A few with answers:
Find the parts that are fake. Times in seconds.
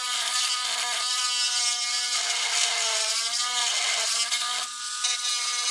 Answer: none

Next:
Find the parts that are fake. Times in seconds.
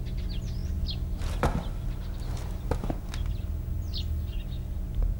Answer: none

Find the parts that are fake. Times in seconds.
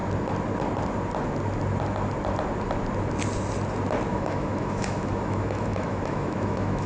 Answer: 4.1-6.9 (autoencoder, DAC-VAE)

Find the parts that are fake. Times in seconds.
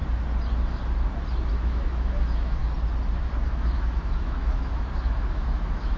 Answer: 1.5-2.6 (autoencoder, DAC-VAE); 3.5-6.0